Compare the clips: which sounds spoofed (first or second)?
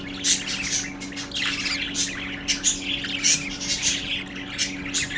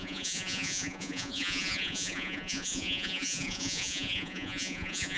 second